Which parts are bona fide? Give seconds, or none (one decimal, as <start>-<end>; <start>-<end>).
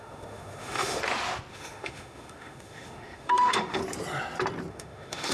1.0-1.5; 3.8-4.7